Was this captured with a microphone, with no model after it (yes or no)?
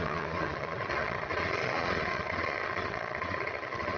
no